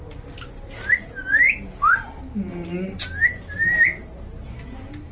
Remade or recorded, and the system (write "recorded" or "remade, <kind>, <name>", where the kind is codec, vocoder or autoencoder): recorded